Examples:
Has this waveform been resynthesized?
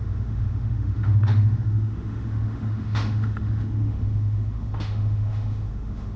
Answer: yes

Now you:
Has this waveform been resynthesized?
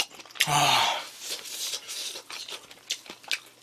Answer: no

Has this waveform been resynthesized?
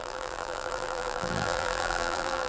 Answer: yes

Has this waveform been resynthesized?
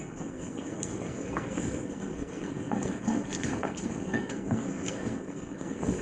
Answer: yes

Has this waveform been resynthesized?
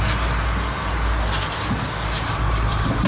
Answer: no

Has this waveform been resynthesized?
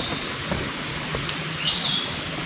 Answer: no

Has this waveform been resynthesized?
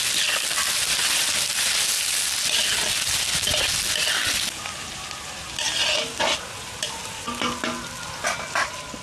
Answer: no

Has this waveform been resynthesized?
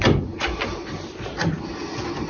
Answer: no